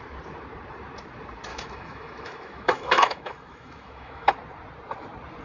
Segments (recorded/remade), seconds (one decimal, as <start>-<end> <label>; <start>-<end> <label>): 0.0-1.5 recorded; 1.5-4.3 remade; 4.3-5.4 recorded